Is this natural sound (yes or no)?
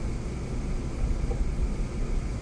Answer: yes